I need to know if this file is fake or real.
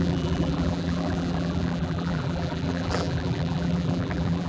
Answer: fake